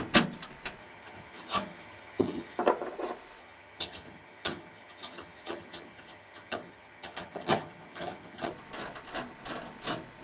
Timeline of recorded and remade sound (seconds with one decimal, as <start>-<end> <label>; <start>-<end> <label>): 0.0-0.8 recorded; 0.8-2.6 remade; 2.6-3.4 recorded; 3.4-8.5 remade; 8.5-10.2 recorded